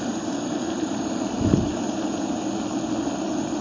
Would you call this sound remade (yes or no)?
no